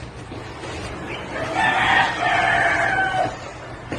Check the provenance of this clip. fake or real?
real